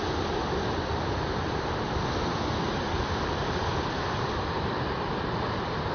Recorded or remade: recorded